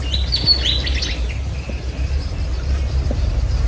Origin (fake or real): real